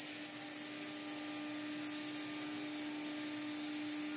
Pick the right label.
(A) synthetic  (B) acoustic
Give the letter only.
B